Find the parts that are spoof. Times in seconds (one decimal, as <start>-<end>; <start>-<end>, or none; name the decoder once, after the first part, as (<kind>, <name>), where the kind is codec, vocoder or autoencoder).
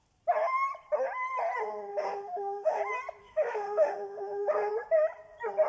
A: 1.9-2.8 (autoencoder, DAC-VAE); 3.2-4.7